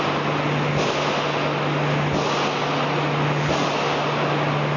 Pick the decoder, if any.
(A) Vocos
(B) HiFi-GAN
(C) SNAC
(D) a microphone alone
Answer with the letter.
D